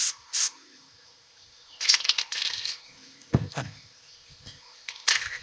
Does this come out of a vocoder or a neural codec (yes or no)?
yes